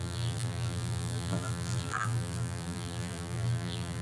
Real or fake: fake